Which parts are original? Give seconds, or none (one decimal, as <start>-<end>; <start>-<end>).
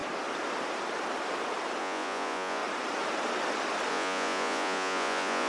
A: 0.0-1.8; 2.6-3.9